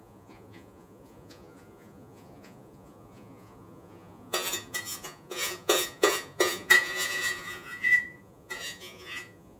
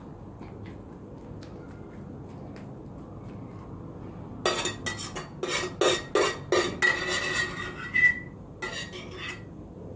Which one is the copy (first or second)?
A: first